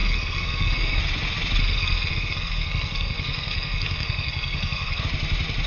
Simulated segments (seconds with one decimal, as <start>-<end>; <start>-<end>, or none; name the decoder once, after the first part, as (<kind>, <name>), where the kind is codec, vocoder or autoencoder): 0.0-1.0 (codec, SNAC); 1.6-5.0